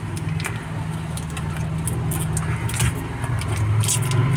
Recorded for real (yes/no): yes